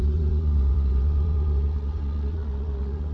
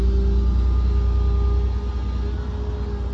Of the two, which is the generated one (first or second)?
first